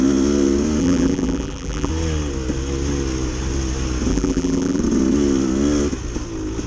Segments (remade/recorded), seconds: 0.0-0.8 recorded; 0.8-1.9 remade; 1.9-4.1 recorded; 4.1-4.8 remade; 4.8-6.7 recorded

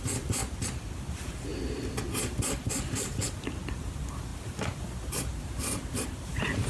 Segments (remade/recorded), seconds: 0.0-0.4 remade; 0.4-1.1 recorded; 1.1-1.5 remade; 1.5-2.2 recorded; 2.2-3.2 remade; 3.2-3.8 recorded; 3.8-6.7 remade